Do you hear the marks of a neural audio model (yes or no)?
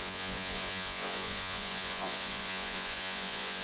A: yes